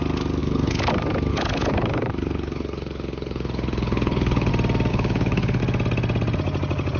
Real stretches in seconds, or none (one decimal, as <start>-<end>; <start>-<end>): 0.0-0.4; 0.9-1.3; 4.5-4.9; 5.6-7.0